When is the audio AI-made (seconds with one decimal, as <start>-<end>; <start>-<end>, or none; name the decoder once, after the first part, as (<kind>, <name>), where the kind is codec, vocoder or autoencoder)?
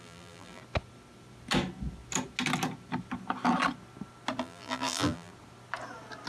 0.0-0.6 (vocoder, BigVGAN v2); 4.4-5.3